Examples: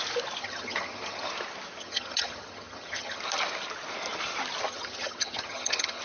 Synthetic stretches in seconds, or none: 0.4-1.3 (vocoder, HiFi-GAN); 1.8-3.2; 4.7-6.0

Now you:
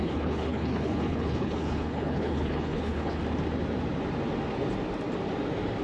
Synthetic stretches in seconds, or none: 0.0-3.2 (codec, HILCodec)

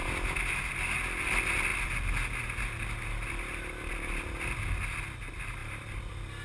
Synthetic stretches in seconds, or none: 5.6-6.4 (vocoder, BigVGAN v2)

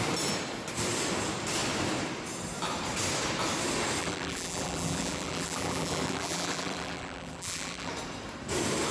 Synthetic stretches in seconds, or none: 4.0-7.9 (vocoder, BigVGAN v2)

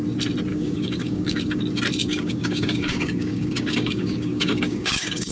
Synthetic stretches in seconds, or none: 0.5-1.6 (codec, DAC); 2.0-5.3

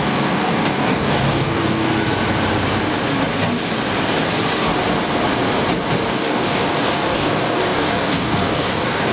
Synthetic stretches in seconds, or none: 0.0-1.9 (codec, DAC); 6.1-9.1

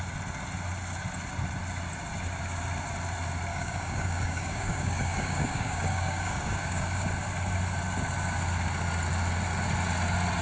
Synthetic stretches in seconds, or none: 3.5-7.1 (codec, DAC)